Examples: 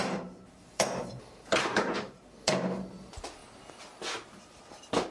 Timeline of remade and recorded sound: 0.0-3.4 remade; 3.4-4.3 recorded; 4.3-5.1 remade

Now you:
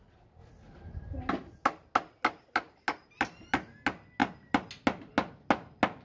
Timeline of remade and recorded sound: 0.0-6.0 recorded

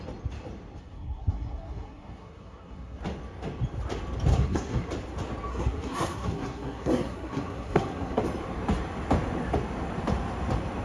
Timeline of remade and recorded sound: 0.0-0.8 recorded; 0.8-3.0 remade; 3.0-4.3 recorded; 4.3-4.9 remade; 4.9-5.5 recorded; 5.5-8.2 remade; 8.2-10.8 recorded

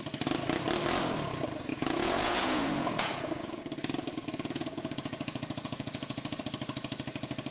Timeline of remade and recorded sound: 0.0-1.7 recorded; 1.7-3.6 remade; 3.6-4.1 recorded; 4.1-6.4 remade; 6.4-7.5 recorded